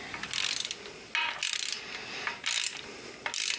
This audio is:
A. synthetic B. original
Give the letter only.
B